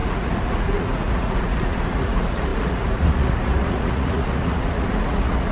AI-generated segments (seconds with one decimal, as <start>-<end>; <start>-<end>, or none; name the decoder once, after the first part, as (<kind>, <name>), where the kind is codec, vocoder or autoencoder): 0.0-5.5 (vocoder, Vocos)